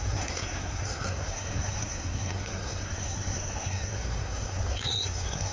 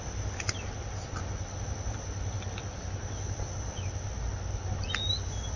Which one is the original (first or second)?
second